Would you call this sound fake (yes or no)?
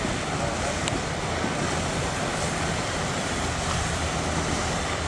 no